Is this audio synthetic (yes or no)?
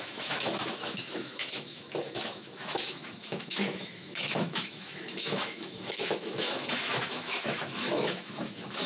yes